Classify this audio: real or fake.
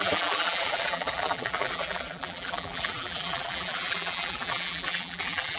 fake